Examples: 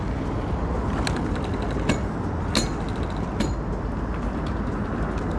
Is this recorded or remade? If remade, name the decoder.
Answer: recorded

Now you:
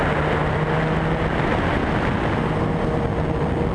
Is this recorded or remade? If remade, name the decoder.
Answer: recorded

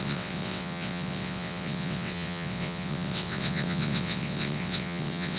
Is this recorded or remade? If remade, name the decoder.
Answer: remade, vocoder, WaveNeXt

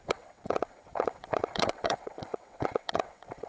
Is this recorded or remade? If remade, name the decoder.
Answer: remade, vocoder, WaveNeXt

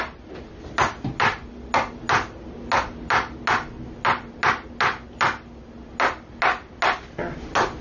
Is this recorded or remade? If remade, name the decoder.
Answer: recorded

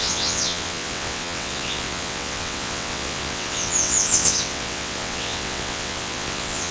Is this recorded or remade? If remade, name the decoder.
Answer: remade, vocoder, WaveNeXt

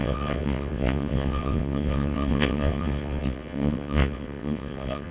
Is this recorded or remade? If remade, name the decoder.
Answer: remade, vocoder, WaveNeXt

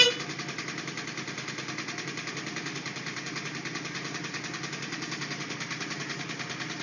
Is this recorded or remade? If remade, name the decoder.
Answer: recorded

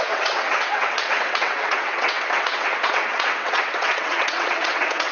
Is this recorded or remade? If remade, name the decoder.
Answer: remade, vocoder, WaveNeXt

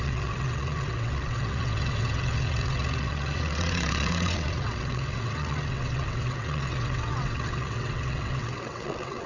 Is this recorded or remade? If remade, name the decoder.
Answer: remade, vocoder, WaveNeXt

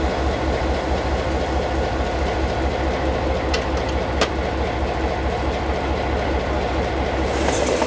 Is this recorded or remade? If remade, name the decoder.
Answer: recorded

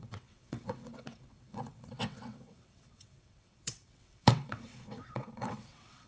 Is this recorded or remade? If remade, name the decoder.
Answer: remade, vocoder, WaveNeXt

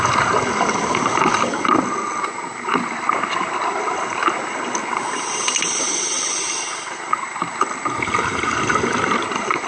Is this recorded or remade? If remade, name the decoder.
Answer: recorded